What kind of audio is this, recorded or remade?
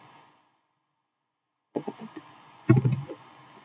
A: remade